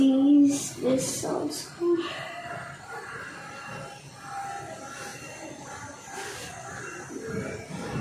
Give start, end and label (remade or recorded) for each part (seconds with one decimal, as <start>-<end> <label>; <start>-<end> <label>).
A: 0.0-8.0 recorded